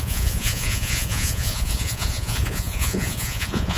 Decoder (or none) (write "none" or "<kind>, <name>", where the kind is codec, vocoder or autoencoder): vocoder, Vocos